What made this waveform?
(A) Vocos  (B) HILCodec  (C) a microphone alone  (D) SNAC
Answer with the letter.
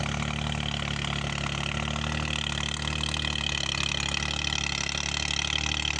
C